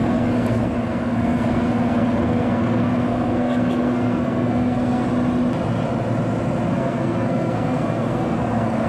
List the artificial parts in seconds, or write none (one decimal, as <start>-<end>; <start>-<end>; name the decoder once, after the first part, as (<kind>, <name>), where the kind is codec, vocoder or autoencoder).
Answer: 0.0-5.1 (codec, SNAC); 6.7-8.9